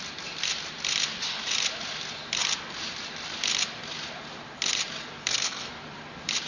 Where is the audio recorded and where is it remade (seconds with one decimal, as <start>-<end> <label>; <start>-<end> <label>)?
0.0-5.2 recorded; 5.2-5.7 remade; 5.7-6.5 recorded